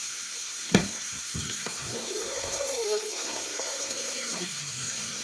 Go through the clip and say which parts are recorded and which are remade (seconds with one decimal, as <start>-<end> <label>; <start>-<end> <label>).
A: 0.0-5.2 remade